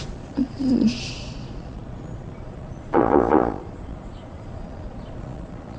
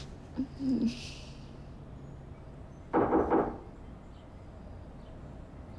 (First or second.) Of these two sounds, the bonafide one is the second